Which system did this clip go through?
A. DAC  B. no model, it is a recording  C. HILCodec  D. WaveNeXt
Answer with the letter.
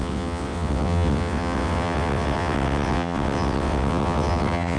D